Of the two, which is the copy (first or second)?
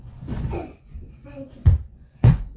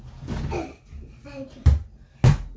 first